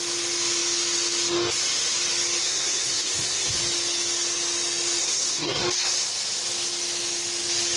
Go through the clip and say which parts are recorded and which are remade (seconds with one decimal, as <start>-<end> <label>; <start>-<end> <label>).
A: 0.0-2.4 recorded; 2.4-3.6 remade; 3.6-5.0 recorded; 5.0-5.6 remade; 5.6-7.8 recorded